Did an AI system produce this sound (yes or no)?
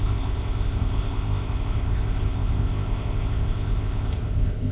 yes